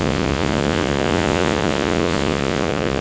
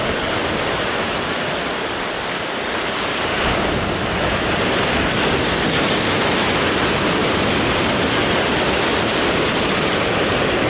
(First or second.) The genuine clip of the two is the second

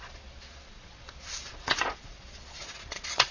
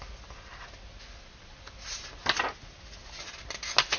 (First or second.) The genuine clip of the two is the second